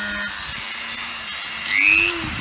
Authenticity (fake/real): real